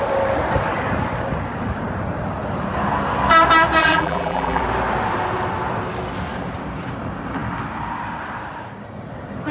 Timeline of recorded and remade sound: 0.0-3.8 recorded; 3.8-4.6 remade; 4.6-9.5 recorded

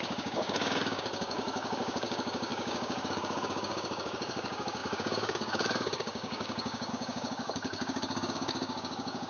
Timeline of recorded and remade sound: 0.0-9.3 remade

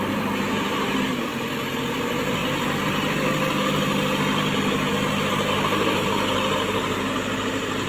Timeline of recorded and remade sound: 0.0-1.3 remade; 1.3-1.9 recorded; 1.9-2.4 remade; 2.4-5.3 recorded; 5.3-7.9 remade

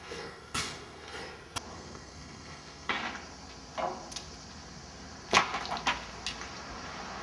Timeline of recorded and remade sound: 0.0-1.2 remade; 1.2-1.7 recorded; 1.7-3.0 remade; 3.0-7.2 recorded